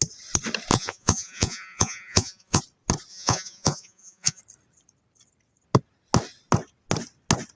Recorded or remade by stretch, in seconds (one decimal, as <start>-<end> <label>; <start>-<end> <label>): 0.0-0.7 recorded; 0.7-2.6 remade; 2.6-3.1 recorded; 3.1-4.4 remade; 4.4-7.6 recorded